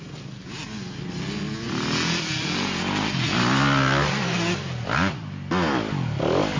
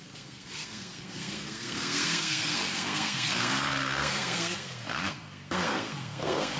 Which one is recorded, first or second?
first